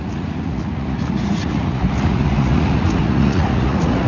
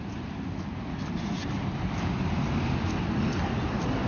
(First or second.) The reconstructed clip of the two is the first